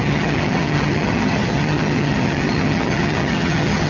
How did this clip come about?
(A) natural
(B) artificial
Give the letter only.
B